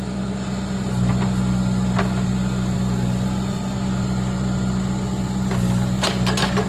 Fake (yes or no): no